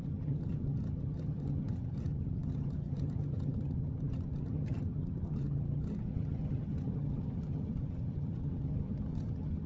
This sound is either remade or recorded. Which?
remade